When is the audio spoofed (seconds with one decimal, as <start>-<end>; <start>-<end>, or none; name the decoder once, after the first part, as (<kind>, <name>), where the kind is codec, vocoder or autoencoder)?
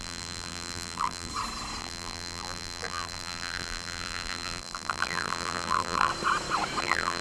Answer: 0.0-1.3 (vocoder, BigVGAN v2); 1.8-6.1; 6.8-7.2